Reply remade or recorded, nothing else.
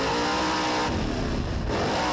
recorded